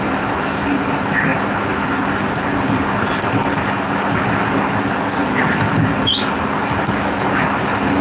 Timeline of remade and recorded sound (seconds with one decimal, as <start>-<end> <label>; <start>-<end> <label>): 0.0-8.0 recorded